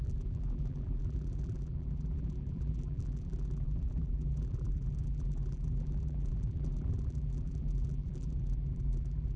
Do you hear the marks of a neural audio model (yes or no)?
yes